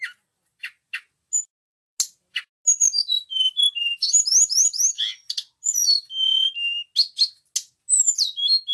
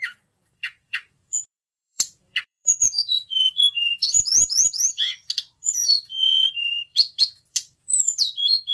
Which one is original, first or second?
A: first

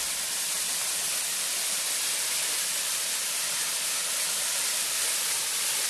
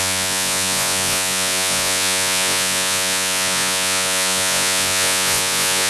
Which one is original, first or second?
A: first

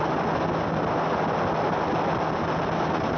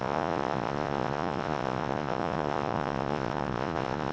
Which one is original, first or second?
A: first